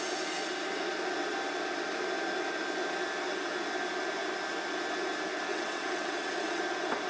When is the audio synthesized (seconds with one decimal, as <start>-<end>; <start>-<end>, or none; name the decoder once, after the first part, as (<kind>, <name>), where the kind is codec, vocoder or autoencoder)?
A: 5.5-6.6 (vocoder, WaveNeXt)